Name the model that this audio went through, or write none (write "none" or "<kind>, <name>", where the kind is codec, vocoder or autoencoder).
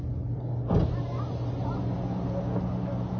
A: none